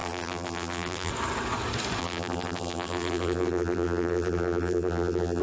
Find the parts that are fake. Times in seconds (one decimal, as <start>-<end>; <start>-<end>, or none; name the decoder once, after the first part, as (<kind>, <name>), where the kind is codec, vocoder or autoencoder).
0.0-1.1 (vocoder, BigVGAN v2); 2.0-5.4